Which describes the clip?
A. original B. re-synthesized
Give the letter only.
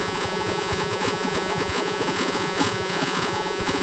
B